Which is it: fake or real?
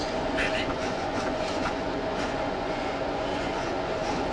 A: fake